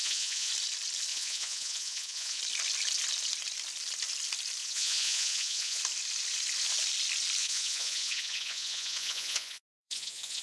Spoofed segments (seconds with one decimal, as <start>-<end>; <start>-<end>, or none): 0.0-0.5; 1.1-2.4; 4.6-5.8; 7.4-10.4